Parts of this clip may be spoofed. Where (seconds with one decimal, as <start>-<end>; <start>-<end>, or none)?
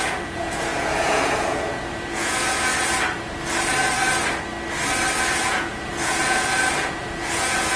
0.0-2.7; 5.3-7.8